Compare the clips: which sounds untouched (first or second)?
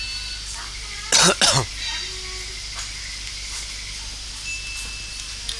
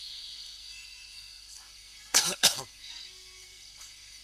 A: first